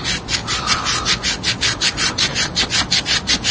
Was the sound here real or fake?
real